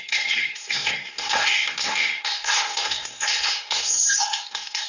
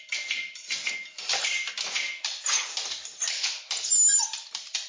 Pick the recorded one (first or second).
second